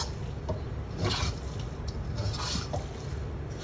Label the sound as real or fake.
real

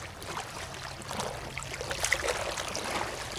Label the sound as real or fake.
real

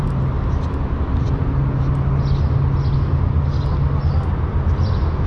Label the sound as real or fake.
real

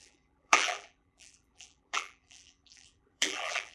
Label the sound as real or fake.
fake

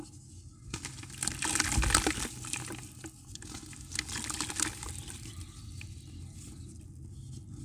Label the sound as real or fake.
real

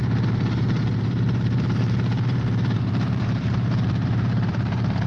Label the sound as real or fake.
fake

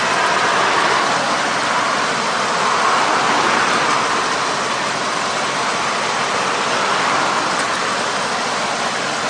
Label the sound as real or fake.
real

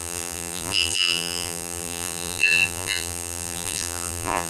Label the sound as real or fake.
fake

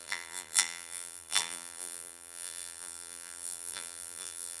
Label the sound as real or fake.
fake